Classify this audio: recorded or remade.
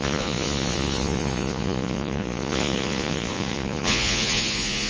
remade